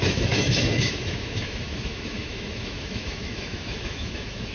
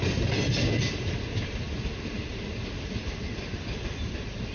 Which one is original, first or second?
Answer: second